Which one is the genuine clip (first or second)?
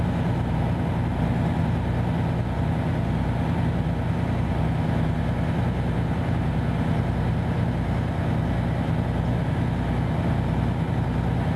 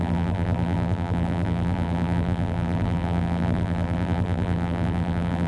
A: first